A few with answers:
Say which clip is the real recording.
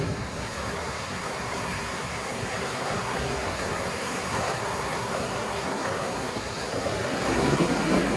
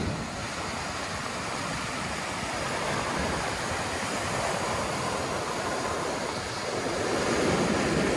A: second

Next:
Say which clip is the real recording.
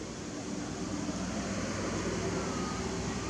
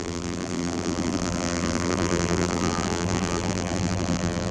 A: first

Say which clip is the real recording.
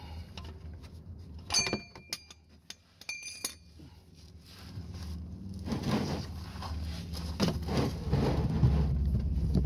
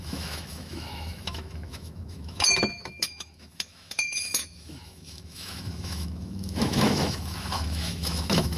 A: first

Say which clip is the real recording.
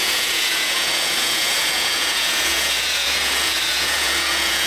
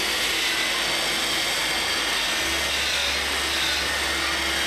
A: second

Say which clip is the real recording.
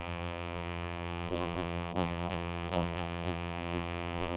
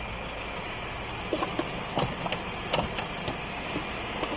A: second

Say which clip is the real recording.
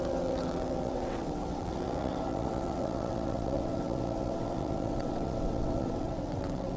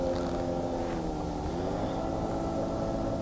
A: second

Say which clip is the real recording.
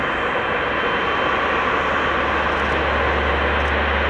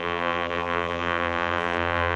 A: first